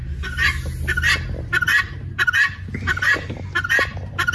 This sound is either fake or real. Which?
real